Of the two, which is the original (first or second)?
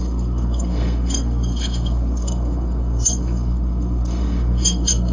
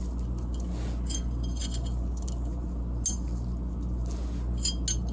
second